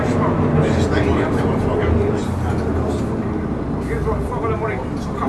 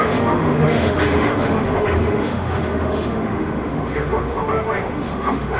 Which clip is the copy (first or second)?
second